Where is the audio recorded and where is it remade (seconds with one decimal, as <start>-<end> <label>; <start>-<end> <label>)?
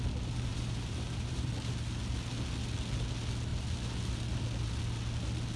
0.0-0.5 recorded; 0.5-1.5 remade; 1.5-5.6 recorded